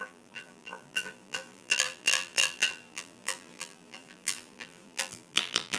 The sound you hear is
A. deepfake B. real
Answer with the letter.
A